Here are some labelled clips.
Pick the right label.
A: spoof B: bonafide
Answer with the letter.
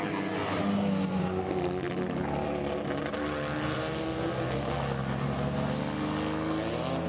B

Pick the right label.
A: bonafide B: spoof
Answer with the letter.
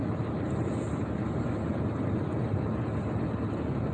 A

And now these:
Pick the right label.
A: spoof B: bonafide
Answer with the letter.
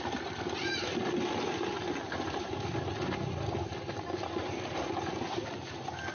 B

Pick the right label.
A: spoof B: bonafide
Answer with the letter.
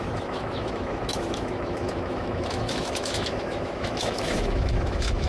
A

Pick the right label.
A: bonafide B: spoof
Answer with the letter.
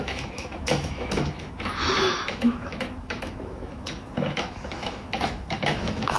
B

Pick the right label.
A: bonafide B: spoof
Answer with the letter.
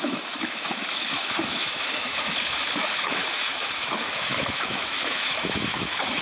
B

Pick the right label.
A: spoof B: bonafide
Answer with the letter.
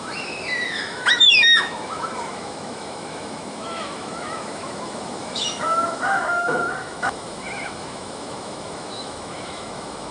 A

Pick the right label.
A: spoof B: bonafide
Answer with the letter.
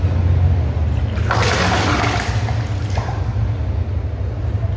B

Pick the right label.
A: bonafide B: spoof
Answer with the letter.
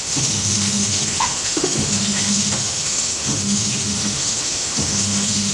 B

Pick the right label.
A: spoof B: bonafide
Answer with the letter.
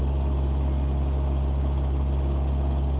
B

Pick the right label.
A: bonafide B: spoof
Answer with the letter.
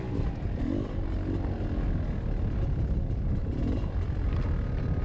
A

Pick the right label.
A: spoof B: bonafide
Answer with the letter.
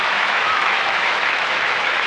A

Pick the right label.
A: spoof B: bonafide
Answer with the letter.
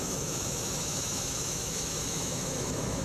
A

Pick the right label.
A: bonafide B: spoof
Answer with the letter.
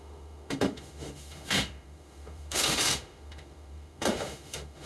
B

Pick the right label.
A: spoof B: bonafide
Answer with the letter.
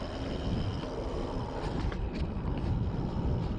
B